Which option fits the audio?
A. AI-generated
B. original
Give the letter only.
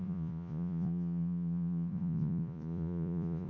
A